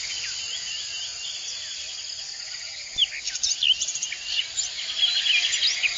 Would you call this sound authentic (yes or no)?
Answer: yes